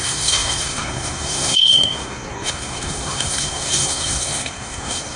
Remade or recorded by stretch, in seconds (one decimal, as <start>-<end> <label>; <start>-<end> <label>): 0.0-5.2 remade